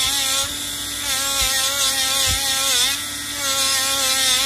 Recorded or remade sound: recorded